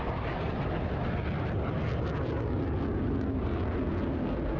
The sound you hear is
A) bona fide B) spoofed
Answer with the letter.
A